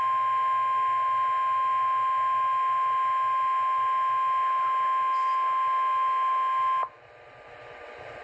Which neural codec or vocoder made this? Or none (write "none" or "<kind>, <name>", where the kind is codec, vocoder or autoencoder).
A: none